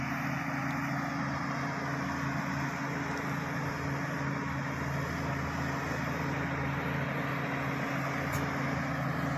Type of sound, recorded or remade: recorded